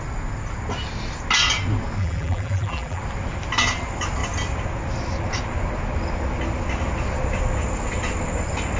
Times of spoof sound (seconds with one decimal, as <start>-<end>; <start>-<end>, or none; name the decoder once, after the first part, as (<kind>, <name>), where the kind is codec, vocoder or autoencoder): 2.0-3.0 (vocoder, BigVGAN v2)